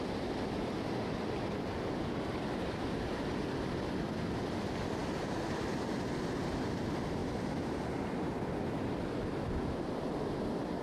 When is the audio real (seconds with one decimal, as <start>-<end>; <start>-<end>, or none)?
0.0-10.8

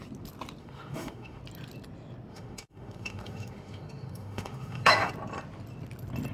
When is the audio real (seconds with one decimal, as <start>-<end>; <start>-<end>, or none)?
0.0-0.6; 1.4-2.3; 5.1-6.3

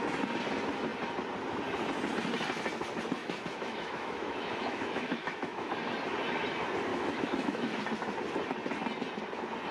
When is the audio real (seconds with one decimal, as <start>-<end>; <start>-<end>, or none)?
0.0-3.2; 5.7-6.9; 7.8-9.7

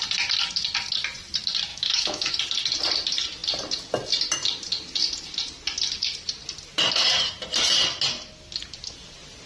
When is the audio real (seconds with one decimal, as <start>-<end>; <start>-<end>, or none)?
0.0-1.7; 2.3-9.5

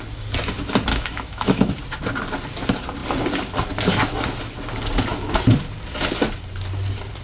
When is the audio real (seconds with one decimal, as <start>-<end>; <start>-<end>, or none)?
0.0-0.9; 1.7-7.2

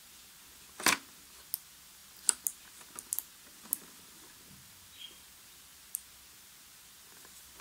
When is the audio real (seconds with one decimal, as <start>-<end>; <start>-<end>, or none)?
0.0-7.6

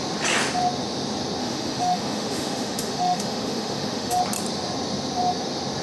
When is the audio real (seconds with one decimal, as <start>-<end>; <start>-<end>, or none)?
0.0-1.4; 4.2-5.8